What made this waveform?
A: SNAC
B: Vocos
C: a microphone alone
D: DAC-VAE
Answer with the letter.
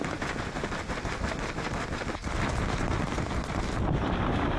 C